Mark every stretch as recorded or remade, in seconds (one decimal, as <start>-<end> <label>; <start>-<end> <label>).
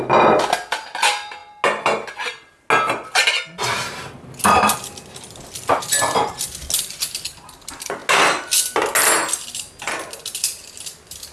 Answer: 0.0-11.3 recorded